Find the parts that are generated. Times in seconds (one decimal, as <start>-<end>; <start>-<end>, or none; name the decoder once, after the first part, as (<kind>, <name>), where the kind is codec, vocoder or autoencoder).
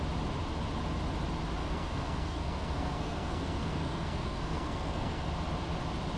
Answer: 1.6-5.3 (codec, SNAC)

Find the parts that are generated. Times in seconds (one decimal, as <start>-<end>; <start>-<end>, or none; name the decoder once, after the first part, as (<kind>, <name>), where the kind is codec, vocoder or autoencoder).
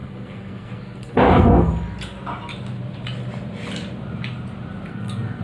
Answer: 0.0-1.7 (codec, SNAC); 4.9-5.4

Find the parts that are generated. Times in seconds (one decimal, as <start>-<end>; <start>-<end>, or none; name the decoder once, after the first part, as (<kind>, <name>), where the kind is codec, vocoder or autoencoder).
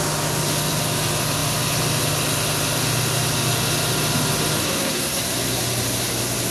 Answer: 4.6-5.2 (codec, SNAC)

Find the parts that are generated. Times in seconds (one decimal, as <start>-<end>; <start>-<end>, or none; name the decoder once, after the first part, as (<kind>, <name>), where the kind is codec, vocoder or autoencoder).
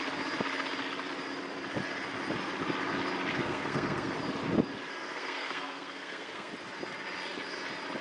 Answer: 3.3-4.1 (codec, SNAC); 4.9-6.5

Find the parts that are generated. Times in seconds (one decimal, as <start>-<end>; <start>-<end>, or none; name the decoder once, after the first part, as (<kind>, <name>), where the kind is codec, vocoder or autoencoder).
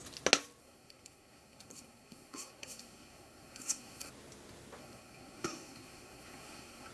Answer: 0.6-4.1 (codec, SNAC); 4.8-6.9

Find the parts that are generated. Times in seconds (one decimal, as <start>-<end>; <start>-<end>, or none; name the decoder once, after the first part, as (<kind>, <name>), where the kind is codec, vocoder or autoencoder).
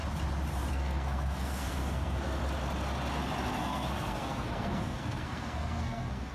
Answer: 0.7-2.4 (codec, SNAC); 3.6-6.3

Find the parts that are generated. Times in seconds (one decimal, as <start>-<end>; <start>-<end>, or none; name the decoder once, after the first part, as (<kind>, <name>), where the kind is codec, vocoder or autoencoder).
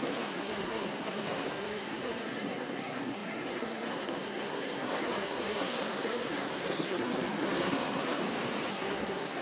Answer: 0.0-8.2 (codec, SNAC); 8.7-9.4